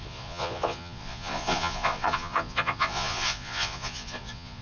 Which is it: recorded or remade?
remade